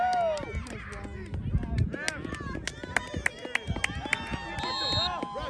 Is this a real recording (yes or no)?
yes